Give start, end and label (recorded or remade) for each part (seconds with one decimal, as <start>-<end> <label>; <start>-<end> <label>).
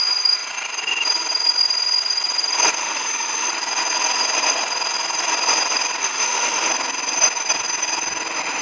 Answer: 0.0-2.8 recorded; 2.8-3.5 remade; 3.5-6.0 recorded; 6.0-6.7 remade; 6.7-8.6 recorded